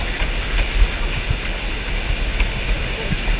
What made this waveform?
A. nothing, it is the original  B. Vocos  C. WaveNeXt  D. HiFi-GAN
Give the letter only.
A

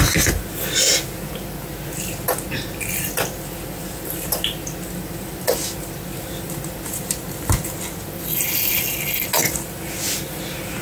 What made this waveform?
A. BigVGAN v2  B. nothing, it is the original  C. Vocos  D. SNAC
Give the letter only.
B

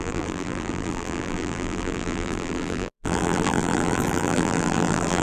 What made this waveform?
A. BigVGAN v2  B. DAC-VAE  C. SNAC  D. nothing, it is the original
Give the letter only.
A